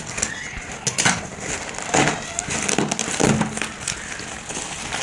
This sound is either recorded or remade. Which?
recorded